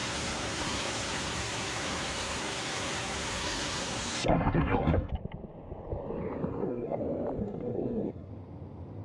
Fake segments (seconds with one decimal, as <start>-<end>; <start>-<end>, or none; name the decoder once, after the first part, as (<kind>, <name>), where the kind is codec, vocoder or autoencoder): 0.0-5.1 (codec, SNAC); 6.5-7.0; 7.4-8.3